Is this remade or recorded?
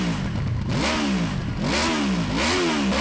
recorded